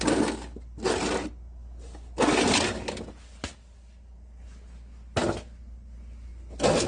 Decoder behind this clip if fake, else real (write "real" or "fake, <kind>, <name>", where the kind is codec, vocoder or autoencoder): real